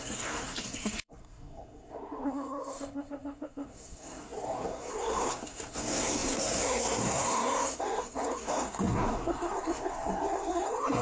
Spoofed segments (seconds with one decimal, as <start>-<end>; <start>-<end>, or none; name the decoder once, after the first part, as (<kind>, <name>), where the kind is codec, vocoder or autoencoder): 0.0-11.0 (codec, SNAC)